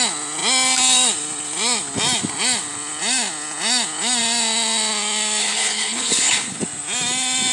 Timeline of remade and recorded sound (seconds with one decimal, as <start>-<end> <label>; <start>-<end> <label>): 0.0-5.4 recorded; 5.4-6.6 remade; 6.6-7.5 recorded